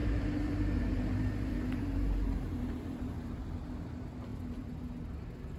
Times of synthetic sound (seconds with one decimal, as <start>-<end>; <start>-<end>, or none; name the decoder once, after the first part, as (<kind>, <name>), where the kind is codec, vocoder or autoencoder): 0.0-3.4 (vocoder, BigVGAN v2); 4.3-4.8